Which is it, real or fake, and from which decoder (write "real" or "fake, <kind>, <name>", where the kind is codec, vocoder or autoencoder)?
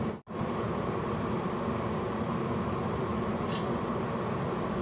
real